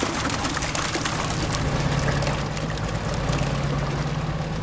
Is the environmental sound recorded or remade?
recorded